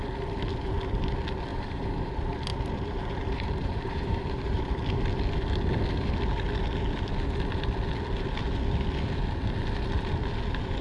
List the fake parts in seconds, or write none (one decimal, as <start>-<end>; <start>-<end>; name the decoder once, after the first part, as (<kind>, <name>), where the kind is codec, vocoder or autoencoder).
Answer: 1.5-2.1 (vocoder, BigVGAN v2); 2.5-4.7

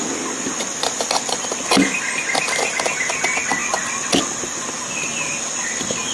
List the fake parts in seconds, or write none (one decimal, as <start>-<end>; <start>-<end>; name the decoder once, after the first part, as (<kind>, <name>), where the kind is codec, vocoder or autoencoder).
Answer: none

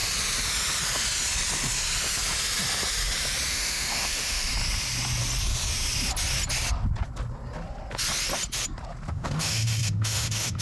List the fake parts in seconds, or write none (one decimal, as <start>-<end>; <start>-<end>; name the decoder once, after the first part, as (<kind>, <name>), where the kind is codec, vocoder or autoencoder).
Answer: 3.5-4.5 (autoencoder, DAC-VAE); 9.1-10.6